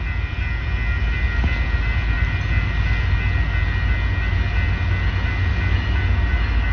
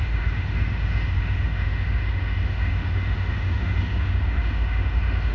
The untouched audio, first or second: first